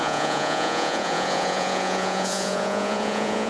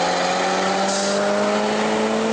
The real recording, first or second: second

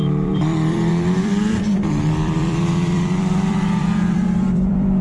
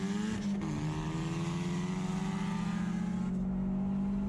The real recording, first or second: second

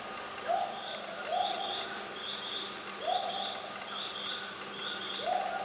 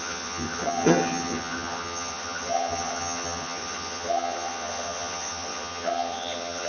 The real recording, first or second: first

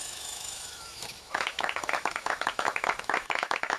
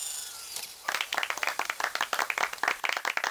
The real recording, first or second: second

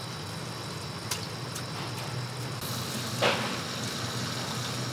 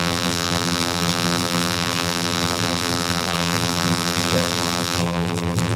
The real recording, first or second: first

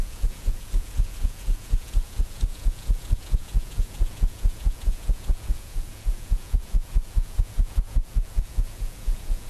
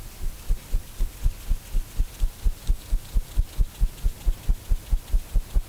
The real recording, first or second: second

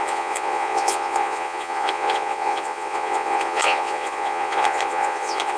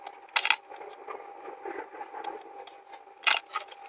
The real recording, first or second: second